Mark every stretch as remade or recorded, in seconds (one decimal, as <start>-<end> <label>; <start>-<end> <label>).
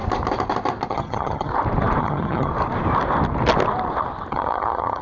0.0-0.9 recorded; 0.9-1.5 remade; 1.5-2.0 recorded; 2.0-2.5 remade; 2.5-4.3 recorded; 4.3-5.0 remade